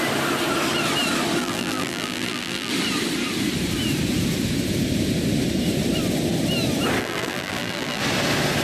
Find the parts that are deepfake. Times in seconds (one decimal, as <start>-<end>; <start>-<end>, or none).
1.4-2.7; 7.0-8.0